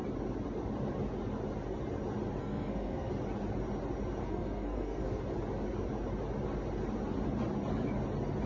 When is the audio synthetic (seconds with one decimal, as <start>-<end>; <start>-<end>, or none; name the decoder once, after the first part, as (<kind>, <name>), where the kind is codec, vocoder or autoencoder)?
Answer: 2.4-3.1 (codec, SNAC); 4.2-5.2